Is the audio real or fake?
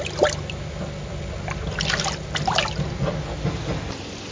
real